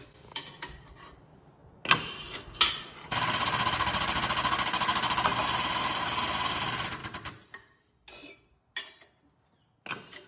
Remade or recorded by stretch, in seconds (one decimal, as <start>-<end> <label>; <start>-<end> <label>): 0.0-10.3 recorded